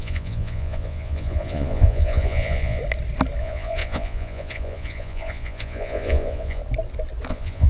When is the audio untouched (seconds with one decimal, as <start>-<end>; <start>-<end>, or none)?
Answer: 2.8-3.4; 6.6-7.3

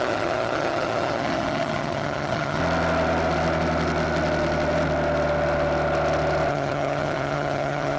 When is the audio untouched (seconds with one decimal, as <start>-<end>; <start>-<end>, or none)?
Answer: 2.6-6.5

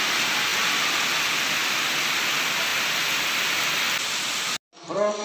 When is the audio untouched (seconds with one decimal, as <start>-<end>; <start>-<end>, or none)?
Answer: 0.0-1.6; 2.1-2.7; 4.4-5.2

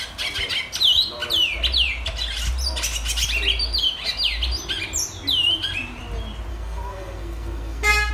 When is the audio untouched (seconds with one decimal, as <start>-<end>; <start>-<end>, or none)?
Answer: 0.0-6.5

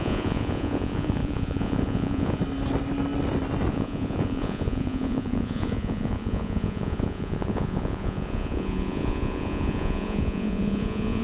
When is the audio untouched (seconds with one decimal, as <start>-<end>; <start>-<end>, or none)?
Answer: 2.4-3.7

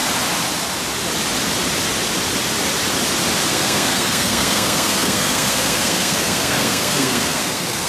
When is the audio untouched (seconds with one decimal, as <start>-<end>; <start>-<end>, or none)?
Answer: 0.0-3.5

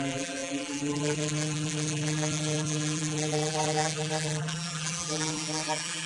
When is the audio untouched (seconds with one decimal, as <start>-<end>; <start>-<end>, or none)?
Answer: none